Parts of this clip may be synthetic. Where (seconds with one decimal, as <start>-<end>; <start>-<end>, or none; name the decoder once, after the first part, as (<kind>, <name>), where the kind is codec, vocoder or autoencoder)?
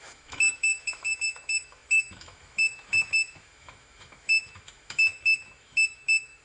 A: 0.0-6.4 (autoencoder, DAC-VAE)